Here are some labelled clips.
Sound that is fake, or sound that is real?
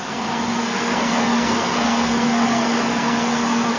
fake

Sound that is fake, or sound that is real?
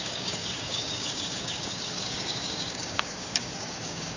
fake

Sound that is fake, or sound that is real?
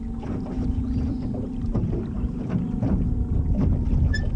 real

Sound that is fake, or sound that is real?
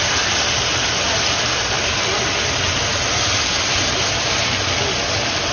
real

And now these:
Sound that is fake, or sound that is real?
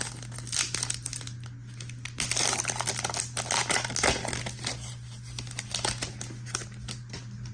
real